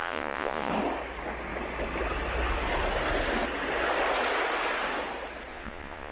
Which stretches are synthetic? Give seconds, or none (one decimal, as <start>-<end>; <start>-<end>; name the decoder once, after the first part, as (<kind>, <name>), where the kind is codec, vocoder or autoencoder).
0.0-0.7 (vocoder, Vocos); 5.5-6.1